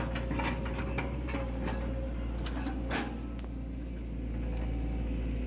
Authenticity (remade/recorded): recorded